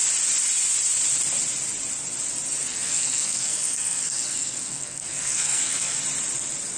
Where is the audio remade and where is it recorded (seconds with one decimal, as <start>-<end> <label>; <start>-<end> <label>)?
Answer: 0.0-2.7 recorded; 2.7-6.0 remade; 6.0-6.8 recorded